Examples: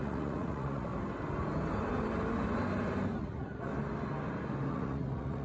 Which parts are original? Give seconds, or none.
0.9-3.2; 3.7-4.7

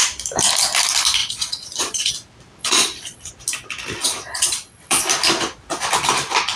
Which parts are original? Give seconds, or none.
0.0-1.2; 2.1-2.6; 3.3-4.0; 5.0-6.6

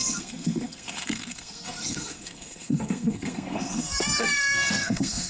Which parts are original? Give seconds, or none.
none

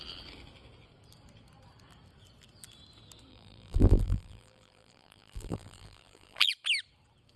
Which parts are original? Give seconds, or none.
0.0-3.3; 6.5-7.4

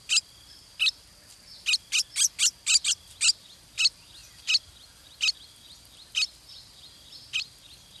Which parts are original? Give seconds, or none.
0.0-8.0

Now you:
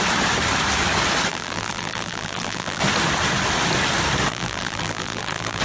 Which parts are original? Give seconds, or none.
0.0-1.3; 2.8-4.3

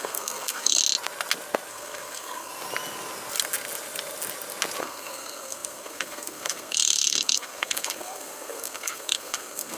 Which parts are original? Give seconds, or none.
0.8-1.7; 2.5-4.8